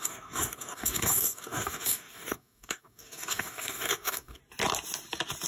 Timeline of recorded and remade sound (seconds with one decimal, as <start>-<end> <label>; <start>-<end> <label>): 0.0-4.4 remade; 4.4-5.5 recorded